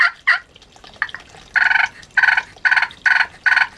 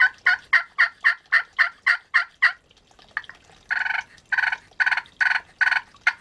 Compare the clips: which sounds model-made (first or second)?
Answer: first